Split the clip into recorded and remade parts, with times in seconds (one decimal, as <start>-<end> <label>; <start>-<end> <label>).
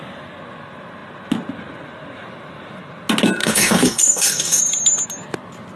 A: 0.0-3.4 recorded; 3.4-4.6 remade; 4.6-5.8 recorded